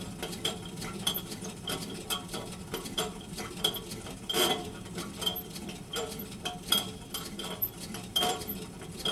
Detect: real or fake fake